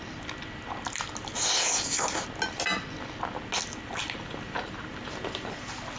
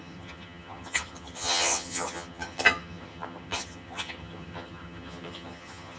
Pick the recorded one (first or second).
first